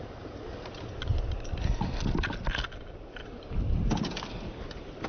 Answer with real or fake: real